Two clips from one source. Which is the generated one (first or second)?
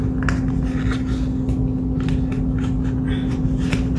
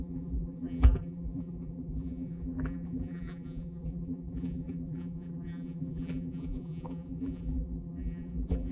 second